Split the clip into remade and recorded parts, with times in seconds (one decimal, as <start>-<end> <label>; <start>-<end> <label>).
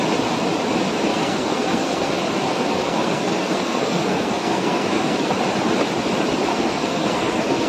0.0-1.1 recorded; 1.1-2.1 remade; 2.1-2.5 recorded; 2.5-5.3 remade; 5.3-6.5 recorded; 6.5-7.7 remade